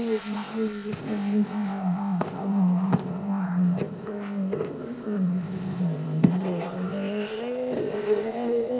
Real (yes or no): no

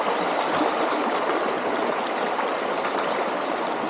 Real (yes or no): yes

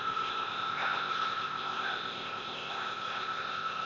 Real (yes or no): no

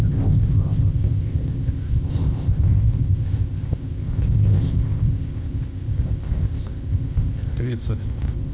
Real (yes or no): no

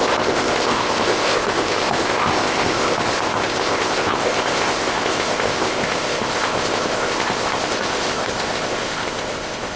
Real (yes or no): no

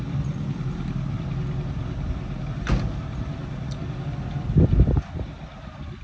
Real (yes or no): yes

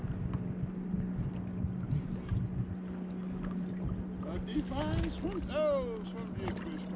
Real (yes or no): yes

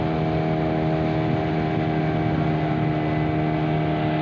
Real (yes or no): yes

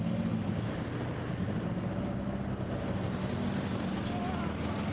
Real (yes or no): yes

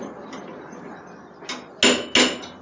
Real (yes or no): yes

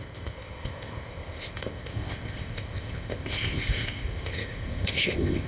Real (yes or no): no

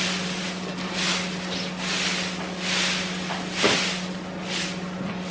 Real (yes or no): yes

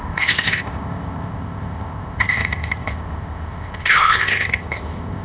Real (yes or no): no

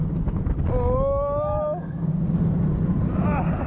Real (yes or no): yes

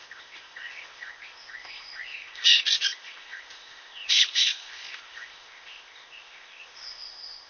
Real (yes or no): no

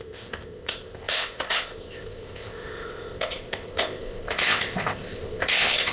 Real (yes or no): no